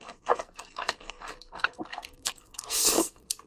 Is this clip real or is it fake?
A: fake